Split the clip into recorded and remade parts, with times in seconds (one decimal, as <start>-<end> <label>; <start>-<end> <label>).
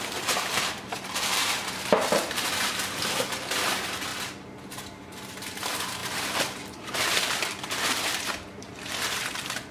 0.0-4.1 remade; 4.1-5.1 recorded; 5.1-9.7 remade